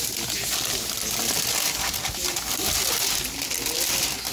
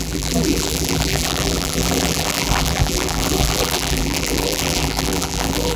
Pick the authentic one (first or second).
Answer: first